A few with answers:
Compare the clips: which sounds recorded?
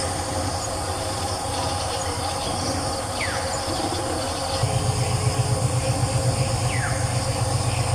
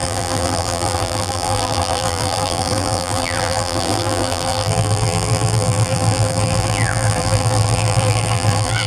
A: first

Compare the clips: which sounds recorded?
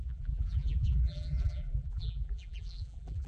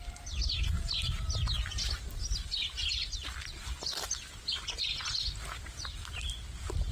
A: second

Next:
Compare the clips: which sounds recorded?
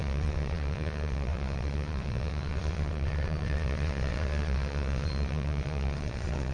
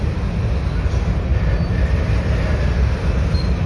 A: second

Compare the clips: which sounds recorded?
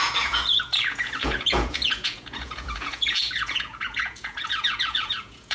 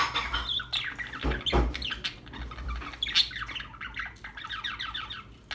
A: second